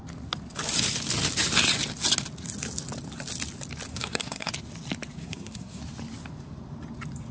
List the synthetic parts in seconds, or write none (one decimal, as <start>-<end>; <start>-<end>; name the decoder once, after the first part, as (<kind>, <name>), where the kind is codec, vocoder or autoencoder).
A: 3.9-4.5 (codec, SNAC); 5.2-5.8